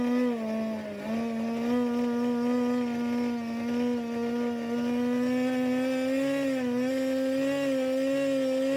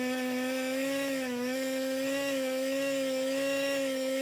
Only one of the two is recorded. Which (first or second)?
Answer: first